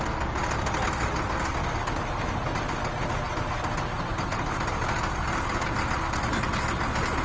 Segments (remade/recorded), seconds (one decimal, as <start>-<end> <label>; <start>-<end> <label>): 0.0-7.2 recorded

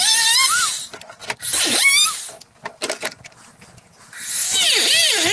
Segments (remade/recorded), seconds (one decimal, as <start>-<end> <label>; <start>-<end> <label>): 0.0-5.3 recorded

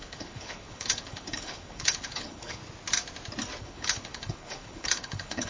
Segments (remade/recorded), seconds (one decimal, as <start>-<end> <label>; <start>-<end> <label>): 0.0-2.6 remade; 2.6-3.6 recorded; 3.6-5.5 remade

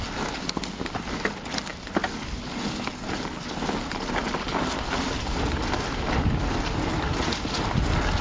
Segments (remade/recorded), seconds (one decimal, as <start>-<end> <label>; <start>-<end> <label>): 0.0-8.2 recorded

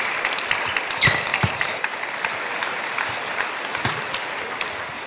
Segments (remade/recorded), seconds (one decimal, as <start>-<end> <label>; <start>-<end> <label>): 0.0-1.3 recorded; 1.3-4.0 remade; 4.0-5.1 recorded

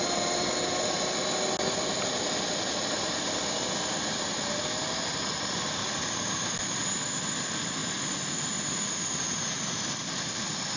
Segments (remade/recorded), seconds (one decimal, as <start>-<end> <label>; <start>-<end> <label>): 0.0-10.8 recorded

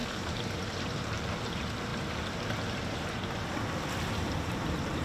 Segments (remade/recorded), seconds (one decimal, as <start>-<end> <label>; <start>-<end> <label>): 0.0-1.9 remade; 1.9-4.2 recorded; 4.2-5.0 remade

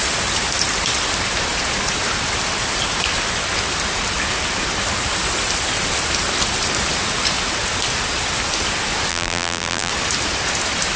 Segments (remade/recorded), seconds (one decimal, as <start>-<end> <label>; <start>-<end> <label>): 0.0-9.1 recorded; 9.1-9.9 remade; 9.9-11.0 recorded